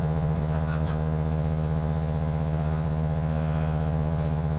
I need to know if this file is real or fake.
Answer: fake